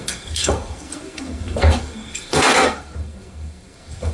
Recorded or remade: remade